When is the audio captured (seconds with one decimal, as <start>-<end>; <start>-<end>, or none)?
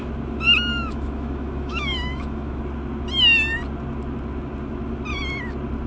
0.0-0.7; 2.6-5.9